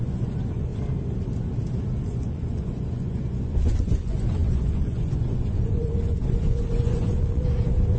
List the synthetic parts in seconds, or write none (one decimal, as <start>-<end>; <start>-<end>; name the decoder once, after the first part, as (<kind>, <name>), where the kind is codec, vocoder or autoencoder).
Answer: 0.0-0.7 (vocoder, Vocos); 2.0-8.0